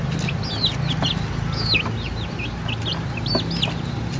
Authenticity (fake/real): real